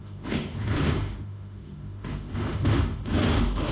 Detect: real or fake fake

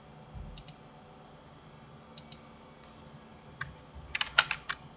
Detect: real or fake real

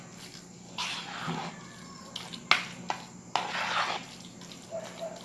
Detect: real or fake real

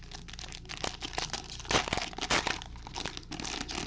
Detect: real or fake real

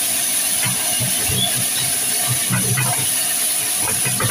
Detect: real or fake real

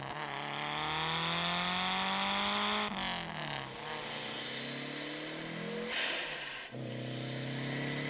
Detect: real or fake real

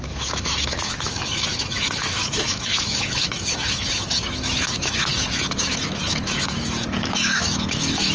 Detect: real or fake fake